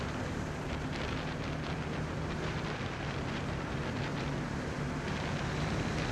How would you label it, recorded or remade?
remade